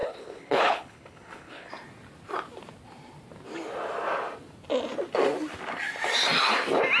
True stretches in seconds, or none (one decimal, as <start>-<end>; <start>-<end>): 1.7-7.0